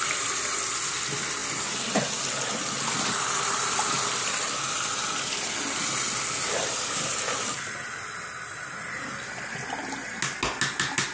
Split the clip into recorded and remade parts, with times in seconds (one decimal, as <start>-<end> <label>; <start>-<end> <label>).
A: 0.0-11.1 recorded